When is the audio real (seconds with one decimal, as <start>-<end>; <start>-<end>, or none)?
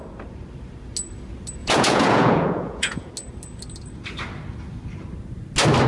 0.0-1.6; 3.1-5.9